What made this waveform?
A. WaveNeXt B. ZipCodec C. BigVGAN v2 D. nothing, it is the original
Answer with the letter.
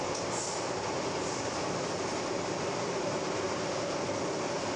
D